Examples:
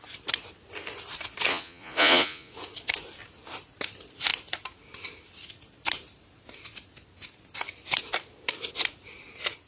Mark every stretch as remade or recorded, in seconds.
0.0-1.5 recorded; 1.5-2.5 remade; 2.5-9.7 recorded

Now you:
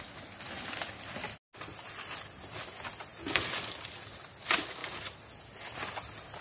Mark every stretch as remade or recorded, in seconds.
0.0-1.7 recorded; 1.7-2.6 remade; 2.6-4.8 recorded; 4.8-5.4 remade; 5.4-6.4 recorded